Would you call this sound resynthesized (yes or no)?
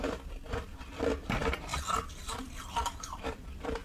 yes